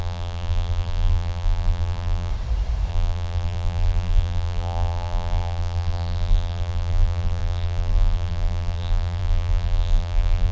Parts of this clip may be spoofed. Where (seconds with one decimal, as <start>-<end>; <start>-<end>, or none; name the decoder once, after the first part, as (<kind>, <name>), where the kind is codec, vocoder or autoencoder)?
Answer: 0.0-2.3 (vocoder, BigVGAN v2); 2.9-10.5